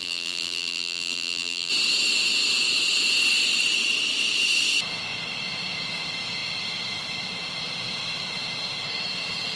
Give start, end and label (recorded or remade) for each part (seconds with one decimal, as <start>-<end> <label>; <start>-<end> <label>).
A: 0.0-1.7 remade; 1.7-9.6 recorded